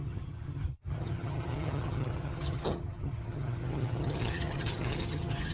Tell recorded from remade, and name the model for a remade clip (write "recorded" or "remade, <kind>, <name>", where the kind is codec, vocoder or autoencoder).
remade, vocoder, HiFi-GAN